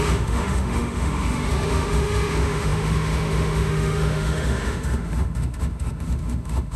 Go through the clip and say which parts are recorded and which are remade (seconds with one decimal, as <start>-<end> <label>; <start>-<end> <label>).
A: 0.0-6.8 remade